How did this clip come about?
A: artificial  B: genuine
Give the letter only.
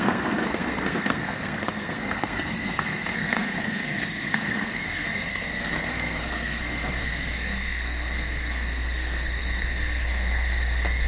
A